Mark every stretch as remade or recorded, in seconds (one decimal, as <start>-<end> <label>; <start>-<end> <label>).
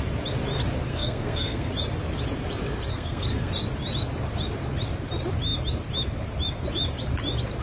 0.0-0.9 recorded; 0.9-1.7 remade; 1.7-2.9 recorded; 2.9-3.5 remade; 3.5-7.6 recorded